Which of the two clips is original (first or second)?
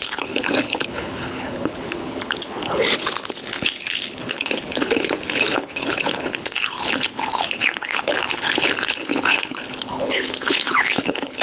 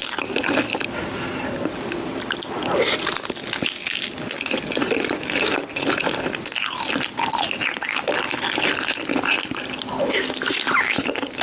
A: second